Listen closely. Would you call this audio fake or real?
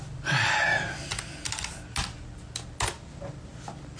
real